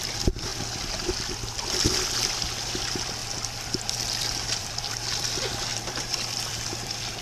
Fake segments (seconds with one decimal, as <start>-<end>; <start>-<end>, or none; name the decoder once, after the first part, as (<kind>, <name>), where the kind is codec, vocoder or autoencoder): 0.0-0.5 (vocoder, BigVGAN v2); 2.8-7.2